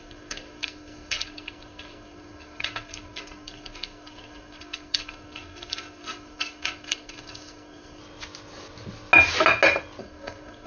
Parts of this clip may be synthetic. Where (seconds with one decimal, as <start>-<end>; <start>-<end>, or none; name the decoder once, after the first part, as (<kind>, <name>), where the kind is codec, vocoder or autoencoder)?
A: 0.0-8.0 (codec, SNAC); 10.0-10.7